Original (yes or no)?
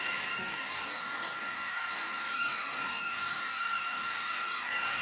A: no